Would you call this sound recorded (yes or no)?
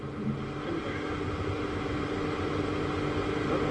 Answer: yes